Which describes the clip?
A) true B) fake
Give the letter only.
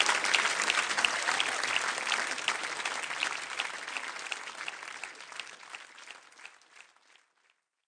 A